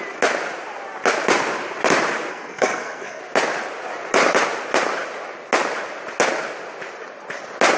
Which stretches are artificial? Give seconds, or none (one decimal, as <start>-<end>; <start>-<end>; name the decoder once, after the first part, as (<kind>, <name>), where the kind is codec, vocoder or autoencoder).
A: 2.3-3.2 (codec, SNAC)